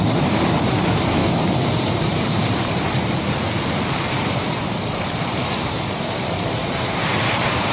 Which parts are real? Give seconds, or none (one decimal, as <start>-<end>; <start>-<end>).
1.2-1.9